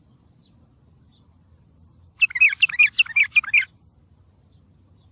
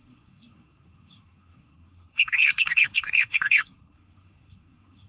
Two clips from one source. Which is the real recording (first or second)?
first